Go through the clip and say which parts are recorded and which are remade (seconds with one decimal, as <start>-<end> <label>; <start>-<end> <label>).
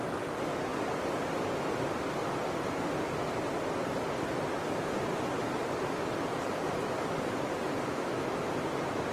0.0-9.1 recorded